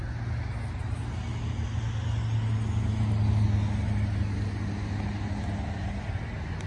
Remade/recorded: recorded